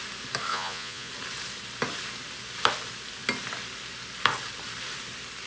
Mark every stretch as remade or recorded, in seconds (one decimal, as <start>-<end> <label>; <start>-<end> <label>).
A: 0.0-0.5 recorded; 0.5-1.1 remade; 1.1-5.5 recorded